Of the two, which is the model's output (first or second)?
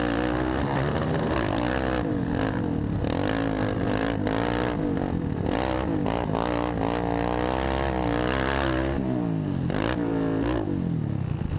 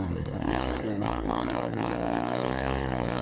second